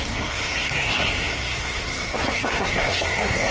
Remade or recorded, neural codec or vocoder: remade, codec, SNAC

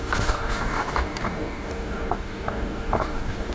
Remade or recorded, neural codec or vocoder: remade, codec, DAC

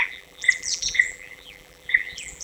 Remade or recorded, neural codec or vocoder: remade, vocoder, BigVGAN v2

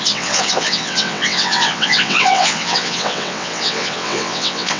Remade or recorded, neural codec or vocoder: remade, vocoder, WaveNeXt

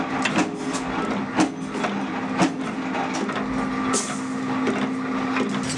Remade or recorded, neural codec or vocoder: recorded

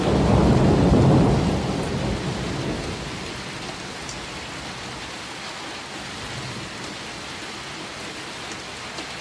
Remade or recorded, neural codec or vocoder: recorded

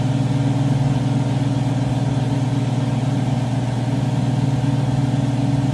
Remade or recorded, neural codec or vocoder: recorded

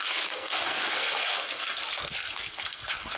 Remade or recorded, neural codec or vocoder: remade, codec, SNAC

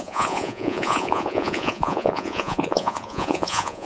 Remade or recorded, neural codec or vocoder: remade, vocoder, Vocos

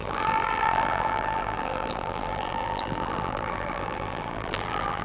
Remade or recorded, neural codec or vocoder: remade, vocoder, BigVGAN v2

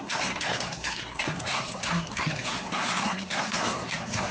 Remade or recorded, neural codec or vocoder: remade, codec, SNAC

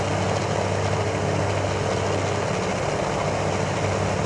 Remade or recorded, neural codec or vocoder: recorded